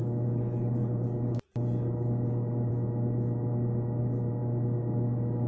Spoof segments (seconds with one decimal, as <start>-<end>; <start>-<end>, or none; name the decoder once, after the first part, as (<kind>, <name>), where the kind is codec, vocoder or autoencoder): none